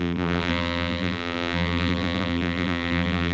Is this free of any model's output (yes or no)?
no